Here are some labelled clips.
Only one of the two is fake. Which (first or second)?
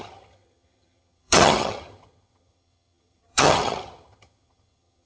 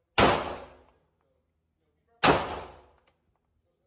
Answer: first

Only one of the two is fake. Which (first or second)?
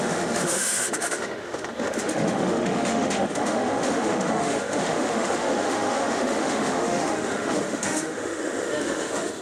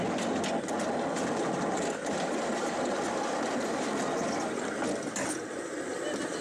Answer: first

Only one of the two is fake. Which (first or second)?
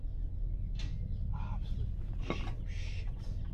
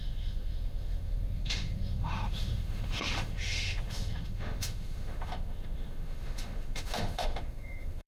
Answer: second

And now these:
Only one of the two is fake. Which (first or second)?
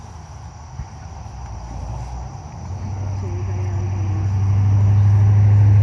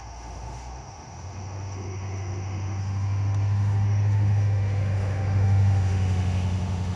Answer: second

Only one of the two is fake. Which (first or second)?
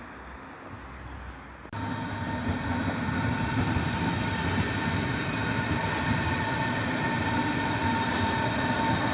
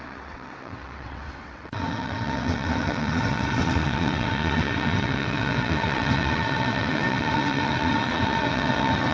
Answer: second